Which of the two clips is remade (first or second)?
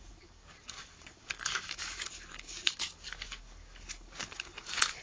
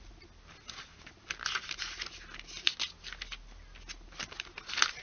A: first